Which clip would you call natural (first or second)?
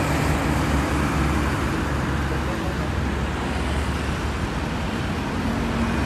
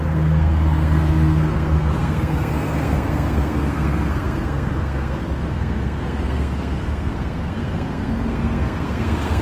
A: first